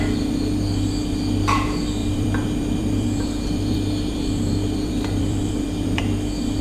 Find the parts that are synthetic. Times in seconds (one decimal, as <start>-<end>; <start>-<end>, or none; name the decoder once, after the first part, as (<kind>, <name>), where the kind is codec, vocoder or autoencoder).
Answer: 2.0-6.0 (vocoder, BigVGAN v2)